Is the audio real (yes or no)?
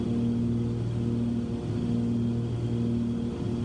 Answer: yes